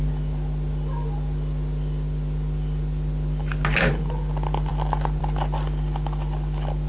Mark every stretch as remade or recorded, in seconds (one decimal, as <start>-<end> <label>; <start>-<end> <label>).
0.0-6.9 recorded